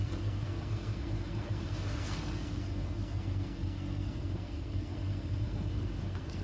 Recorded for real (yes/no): no